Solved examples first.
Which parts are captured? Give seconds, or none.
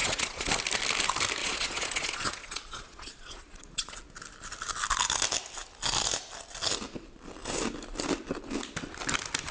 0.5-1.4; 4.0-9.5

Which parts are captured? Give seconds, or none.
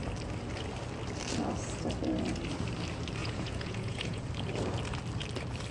0.0-3.2; 4.3-5.7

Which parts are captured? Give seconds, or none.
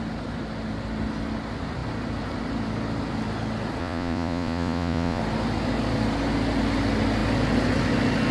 0.0-3.8; 5.2-8.3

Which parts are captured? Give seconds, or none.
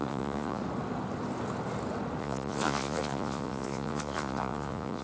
0.6-2.2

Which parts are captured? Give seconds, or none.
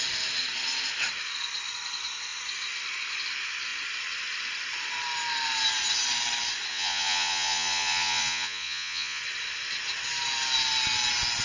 0.0-6.7; 9.2-11.4